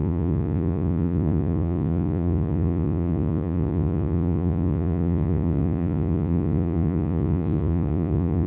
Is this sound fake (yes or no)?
yes